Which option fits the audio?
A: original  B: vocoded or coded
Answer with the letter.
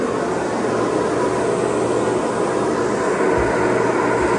A